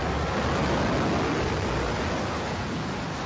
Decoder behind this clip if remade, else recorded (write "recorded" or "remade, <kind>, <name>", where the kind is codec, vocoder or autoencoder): recorded